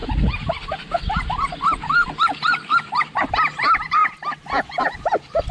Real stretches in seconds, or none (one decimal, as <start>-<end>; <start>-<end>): 0.0-3.3; 4.0-4.8